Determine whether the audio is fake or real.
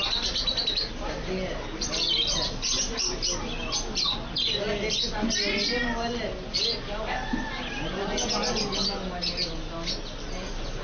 real